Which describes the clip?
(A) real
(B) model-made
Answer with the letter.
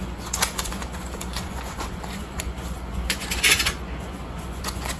B